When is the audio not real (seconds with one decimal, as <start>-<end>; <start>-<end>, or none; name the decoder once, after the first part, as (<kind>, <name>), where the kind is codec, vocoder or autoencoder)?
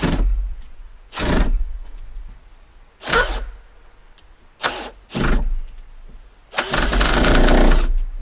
0.5-2.2 (vocoder, Vocos)